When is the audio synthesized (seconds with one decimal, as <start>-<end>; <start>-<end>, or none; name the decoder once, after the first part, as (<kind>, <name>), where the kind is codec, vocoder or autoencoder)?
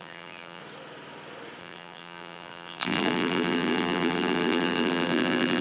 0.0-0.6 (vocoder, BigVGAN v2); 1.6-5.6